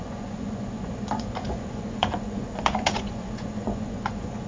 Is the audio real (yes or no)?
no